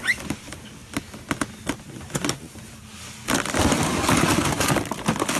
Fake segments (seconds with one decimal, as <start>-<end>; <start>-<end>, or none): none